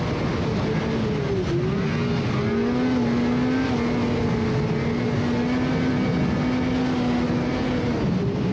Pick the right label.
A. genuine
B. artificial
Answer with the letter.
A